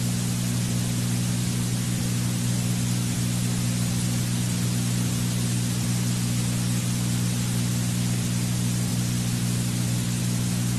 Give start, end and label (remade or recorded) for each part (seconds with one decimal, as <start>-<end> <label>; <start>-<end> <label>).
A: 0.0-10.8 recorded